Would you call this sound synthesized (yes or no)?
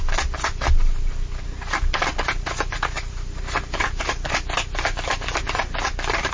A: no